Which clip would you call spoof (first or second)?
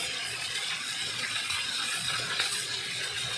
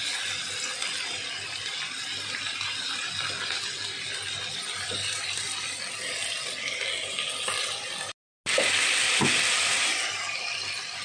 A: first